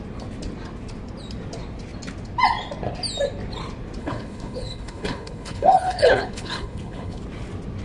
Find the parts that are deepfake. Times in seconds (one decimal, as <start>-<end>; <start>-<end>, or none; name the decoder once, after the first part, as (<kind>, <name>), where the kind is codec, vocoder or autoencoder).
4.0-7.2 (codec, HILCodec)